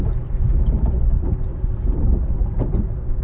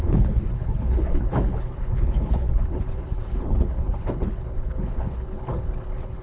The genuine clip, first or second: first